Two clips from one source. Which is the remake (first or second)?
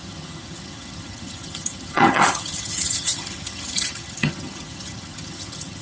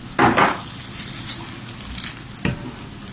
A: first